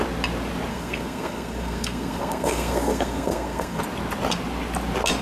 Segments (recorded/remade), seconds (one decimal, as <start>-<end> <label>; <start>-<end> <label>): 0.0-0.7 recorded; 0.7-3.8 remade; 3.8-5.2 recorded